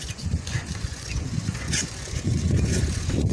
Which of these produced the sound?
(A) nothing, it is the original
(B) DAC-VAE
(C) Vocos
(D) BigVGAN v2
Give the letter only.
C